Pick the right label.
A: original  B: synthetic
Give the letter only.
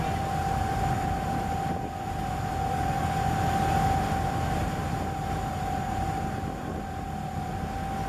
A